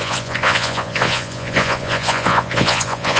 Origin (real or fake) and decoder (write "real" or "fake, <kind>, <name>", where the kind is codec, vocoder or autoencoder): fake, vocoder, Vocos